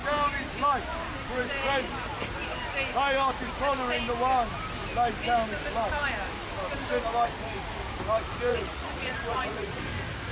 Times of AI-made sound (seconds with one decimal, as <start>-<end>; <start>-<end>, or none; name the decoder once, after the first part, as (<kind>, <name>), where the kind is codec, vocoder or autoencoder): 8.5-9.8 (vocoder, Vocos)